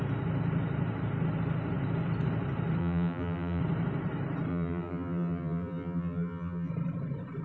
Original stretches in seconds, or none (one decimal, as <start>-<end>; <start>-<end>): 0.0-2.8; 3.6-4.5; 6.7-7.4

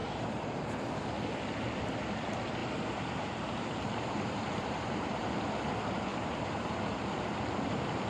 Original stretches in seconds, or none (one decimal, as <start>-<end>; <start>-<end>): 0.8-2.6; 5.5-6.1; 6.8-8.1